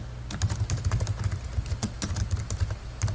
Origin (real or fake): real